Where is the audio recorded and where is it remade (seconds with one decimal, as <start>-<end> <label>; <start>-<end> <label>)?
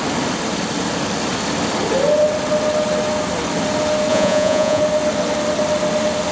0.0-4.1 recorded; 4.1-4.8 remade; 4.8-6.3 recorded